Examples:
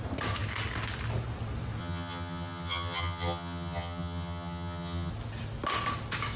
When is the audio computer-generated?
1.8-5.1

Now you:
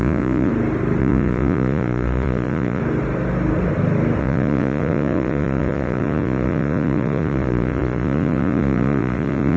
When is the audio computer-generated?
0.0-0.5; 1.0-2.8; 4.2-9.6

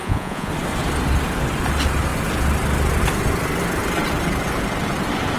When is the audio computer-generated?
0.0-0.5

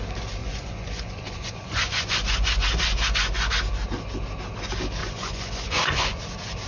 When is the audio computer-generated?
0.4-3.5; 5.0-6.2

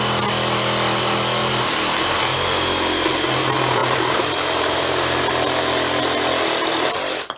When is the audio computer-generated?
1.4-2.1; 3.8-5.2

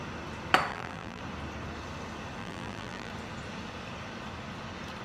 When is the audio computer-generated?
0.7-1.2; 2.4-3.1